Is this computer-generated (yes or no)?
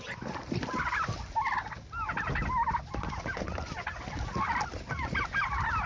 yes